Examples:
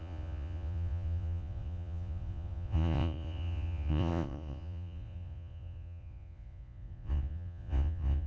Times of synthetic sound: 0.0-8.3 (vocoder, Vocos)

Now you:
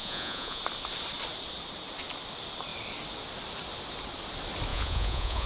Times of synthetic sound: 0.0-0.6 (vocoder, Vocos); 4.7-5.5

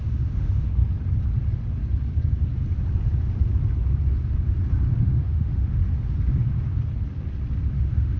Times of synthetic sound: 0.0-0.8 (autoencoder, DAC-VAE); 5.0-5.8; 7.7-8.2

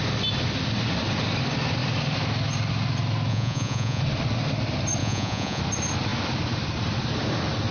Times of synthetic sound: 3.3-4.0 (vocoder, Vocos); 5.0-5.6